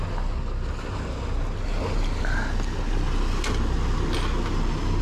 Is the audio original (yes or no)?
yes